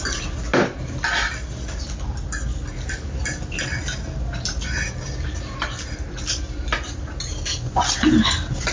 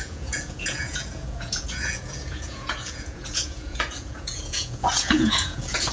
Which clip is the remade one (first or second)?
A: second